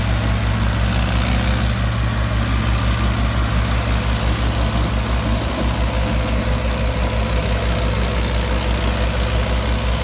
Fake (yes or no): no